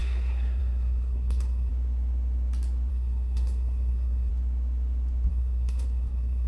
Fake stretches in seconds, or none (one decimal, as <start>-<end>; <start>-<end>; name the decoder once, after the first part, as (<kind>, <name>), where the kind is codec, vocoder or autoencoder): 0.0-1.7 (codec, SNAC); 2.9-4.3; 5.3-6.5